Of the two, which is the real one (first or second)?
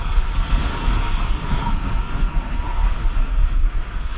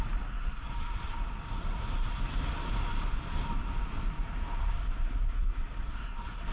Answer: second